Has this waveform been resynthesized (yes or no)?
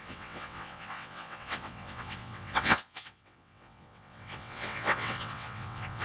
yes